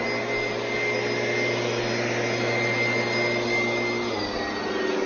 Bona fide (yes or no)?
yes